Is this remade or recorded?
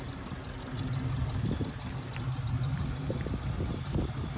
recorded